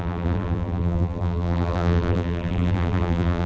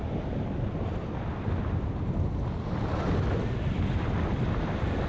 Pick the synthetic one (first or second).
first